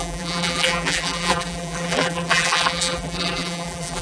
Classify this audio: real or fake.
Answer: fake